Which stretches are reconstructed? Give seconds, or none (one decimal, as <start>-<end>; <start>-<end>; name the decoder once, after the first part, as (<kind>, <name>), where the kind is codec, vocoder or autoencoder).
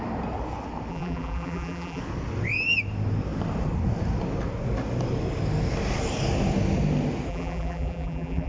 0.9-2.0 (vocoder, BigVGAN v2); 7.3-8.5